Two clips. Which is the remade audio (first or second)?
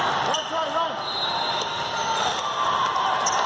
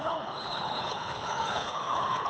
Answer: second